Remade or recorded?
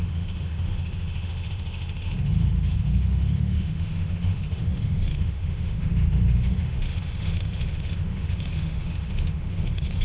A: remade